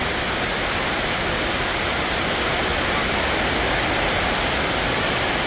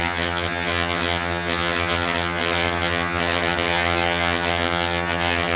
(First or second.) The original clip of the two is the first